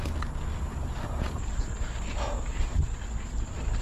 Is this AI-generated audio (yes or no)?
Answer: no